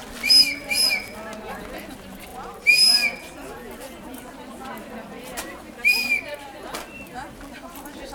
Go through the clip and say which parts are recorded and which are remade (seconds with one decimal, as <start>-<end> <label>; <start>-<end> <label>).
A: 0.0-5.9 recorded; 5.9-7.0 remade; 7.0-8.1 recorded